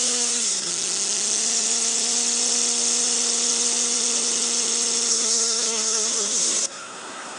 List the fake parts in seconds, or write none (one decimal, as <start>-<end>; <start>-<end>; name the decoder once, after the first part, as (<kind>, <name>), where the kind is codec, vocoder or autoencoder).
0.0-0.7 (codec, SNAC); 5.1-7.4